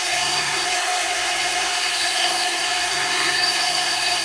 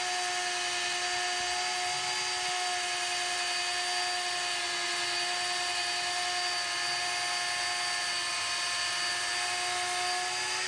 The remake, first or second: first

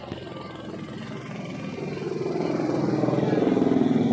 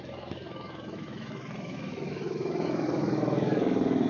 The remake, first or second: second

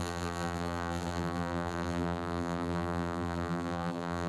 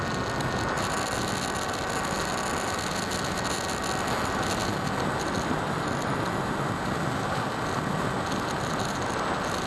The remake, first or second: first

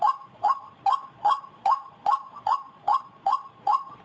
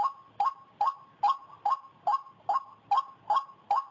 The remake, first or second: first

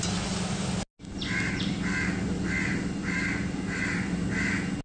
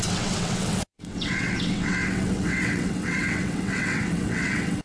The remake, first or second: second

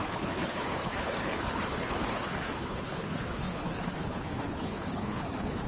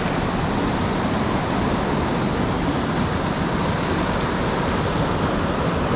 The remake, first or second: first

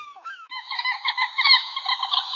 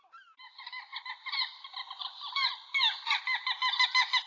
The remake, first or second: first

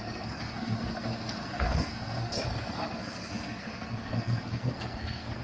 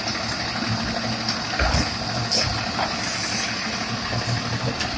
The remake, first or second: first